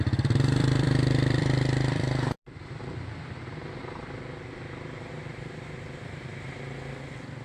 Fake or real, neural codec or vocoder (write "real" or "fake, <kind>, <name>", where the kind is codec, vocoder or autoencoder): fake, vocoder, BigVGAN v2